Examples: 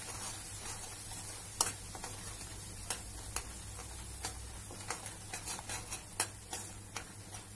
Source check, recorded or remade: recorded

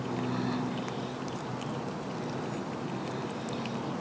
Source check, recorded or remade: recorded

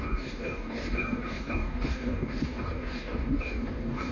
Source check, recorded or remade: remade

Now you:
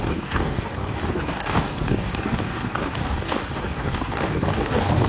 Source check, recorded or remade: remade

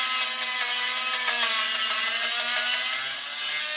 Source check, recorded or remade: recorded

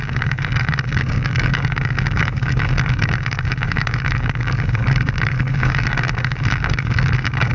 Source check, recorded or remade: remade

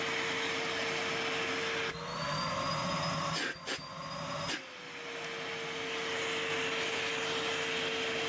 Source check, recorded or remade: recorded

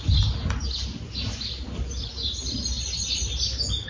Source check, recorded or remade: recorded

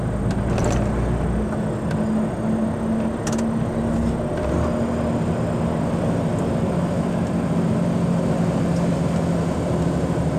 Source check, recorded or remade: recorded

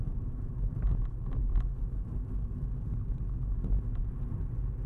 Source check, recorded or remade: recorded